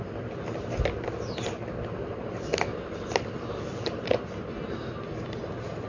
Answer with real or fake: real